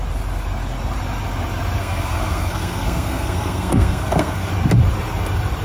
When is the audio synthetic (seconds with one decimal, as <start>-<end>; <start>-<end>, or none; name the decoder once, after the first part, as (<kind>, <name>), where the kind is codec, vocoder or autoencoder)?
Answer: 1.8-4.5 (codec, SNAC)